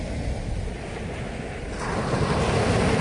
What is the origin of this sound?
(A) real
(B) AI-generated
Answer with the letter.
A